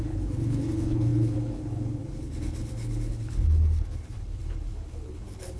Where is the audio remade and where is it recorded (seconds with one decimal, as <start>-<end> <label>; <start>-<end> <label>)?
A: 0.0-5.6 remade